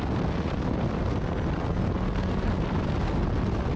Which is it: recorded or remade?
recorded